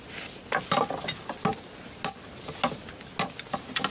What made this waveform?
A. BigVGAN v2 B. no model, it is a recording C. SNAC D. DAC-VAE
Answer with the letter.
B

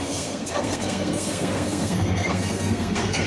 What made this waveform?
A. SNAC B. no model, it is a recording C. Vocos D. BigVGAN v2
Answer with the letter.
A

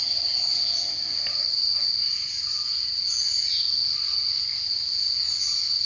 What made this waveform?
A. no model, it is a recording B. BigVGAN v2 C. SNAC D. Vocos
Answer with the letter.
A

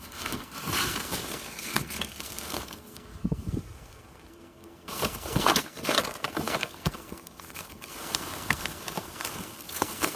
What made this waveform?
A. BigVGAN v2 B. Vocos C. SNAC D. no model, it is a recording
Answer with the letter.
C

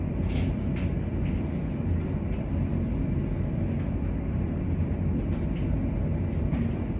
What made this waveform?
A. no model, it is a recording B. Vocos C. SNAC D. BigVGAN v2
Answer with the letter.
A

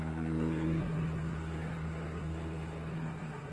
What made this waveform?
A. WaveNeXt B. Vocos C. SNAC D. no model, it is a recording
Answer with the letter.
C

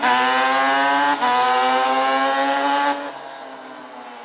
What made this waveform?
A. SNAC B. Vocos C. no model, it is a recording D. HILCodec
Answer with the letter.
C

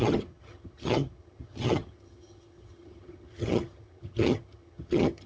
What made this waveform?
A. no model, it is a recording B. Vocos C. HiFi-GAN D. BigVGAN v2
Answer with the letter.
C